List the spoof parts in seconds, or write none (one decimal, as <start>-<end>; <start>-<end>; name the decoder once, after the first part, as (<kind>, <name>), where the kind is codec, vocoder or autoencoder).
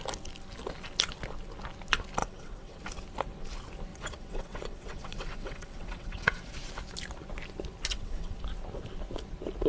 2.2-2.8 (vocoder, WaveNeXt); 3.9-6.5; 7.9-8.4